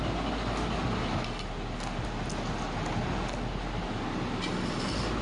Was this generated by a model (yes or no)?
no